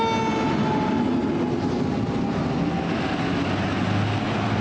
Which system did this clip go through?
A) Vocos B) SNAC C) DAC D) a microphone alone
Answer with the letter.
D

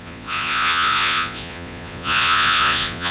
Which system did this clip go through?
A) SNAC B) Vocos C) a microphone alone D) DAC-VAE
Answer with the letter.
B